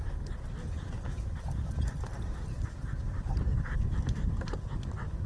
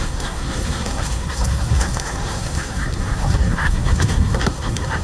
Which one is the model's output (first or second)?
second